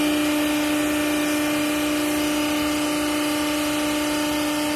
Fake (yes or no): no